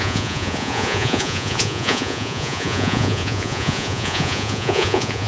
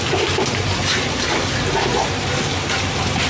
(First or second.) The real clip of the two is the second